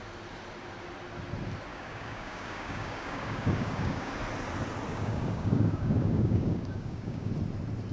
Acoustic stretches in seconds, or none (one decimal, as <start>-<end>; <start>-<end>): 0.0-1.7; 4.1-4.9; 7.3-7.9